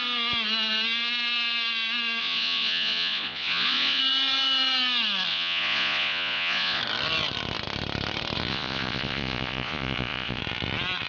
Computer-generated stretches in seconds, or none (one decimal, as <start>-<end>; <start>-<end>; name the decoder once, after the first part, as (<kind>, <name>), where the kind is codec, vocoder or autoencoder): 2.2-4.0 (vocoder, Vocos); 5.3-6.8; 8.5-10.4